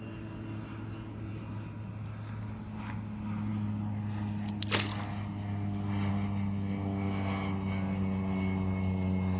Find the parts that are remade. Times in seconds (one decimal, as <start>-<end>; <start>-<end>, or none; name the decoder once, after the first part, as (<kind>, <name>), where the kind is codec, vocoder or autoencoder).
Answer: none